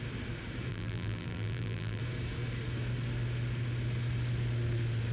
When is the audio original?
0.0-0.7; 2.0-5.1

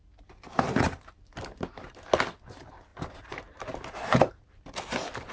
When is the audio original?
0.0-2.9; 4.3-5.3

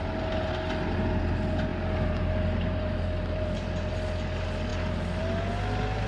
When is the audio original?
0.0-1.7; 3.9-6.1

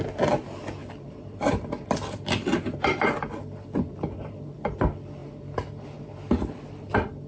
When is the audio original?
0.0-0.8; 4.7-5.2; 6.1-7.3

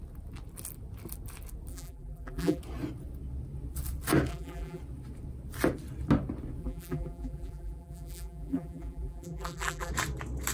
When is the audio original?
0.0-1.7; 2.6-4.3; 4.8-6.6; 9.9-10.5

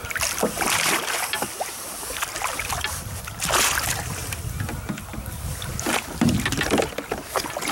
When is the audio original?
0.0-7.7